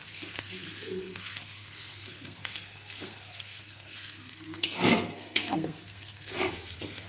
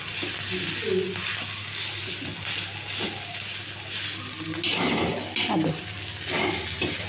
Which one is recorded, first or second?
second